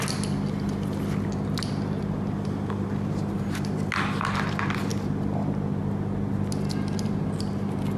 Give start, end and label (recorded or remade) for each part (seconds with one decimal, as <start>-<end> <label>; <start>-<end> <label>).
0.0-8.0 recorded